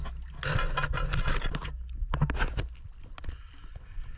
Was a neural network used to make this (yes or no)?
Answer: no